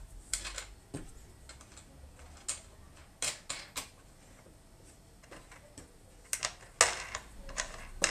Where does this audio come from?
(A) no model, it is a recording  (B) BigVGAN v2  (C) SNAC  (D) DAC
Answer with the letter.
A